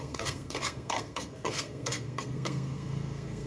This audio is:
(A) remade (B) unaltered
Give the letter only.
A